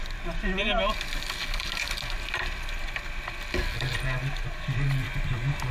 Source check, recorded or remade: recorded